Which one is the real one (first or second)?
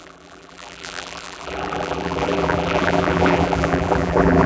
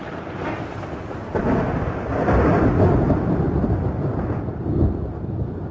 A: second